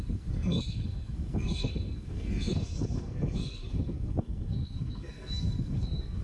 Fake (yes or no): yes